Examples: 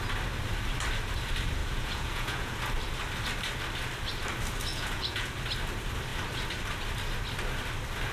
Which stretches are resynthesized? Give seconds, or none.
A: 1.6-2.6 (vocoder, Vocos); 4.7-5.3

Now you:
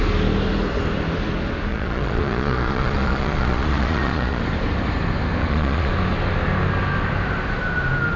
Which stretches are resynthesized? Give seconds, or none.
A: 1.7-4.4 (vocoder, Vocos); 5.4-5.9

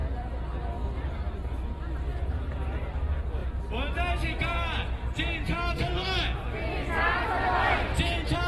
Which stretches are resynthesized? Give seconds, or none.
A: 2.1-2.9 (vocoder, Vocos)

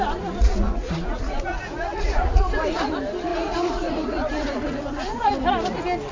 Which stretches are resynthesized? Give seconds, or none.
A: 0.4-2.5 (vocoder, Vocos); 3.3-5.3

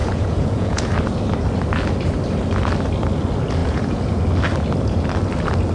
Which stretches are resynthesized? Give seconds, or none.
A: 0.0-0.8 (vocoder, Vocos); 3.6-4.2

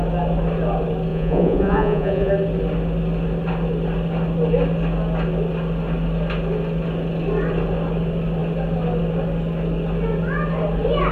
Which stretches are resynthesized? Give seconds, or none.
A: 1.1-2.3 (vocoder, Vocos)